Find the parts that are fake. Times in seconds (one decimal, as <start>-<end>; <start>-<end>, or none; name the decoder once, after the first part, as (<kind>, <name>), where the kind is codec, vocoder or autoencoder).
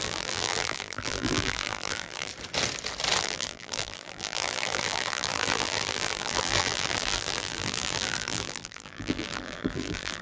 0.0-2.3 (vocoder, BigVGAN v2); 3.2-10.2